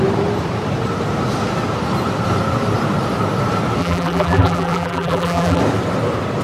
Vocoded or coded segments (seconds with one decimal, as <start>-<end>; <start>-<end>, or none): 3.8-5.6